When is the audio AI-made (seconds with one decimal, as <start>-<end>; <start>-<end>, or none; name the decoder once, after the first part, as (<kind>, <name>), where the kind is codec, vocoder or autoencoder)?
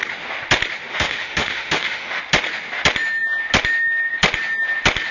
0.9-2.2 (autoencoder, DAC-VAE)